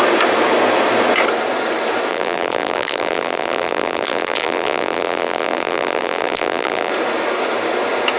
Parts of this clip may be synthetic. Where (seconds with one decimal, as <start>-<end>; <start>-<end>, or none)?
2.1-6.9